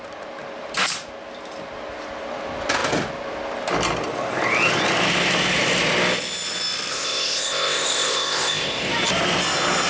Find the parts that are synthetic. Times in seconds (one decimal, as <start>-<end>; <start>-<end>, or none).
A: 6.9-8.9